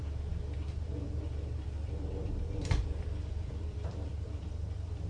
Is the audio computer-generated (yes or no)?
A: yes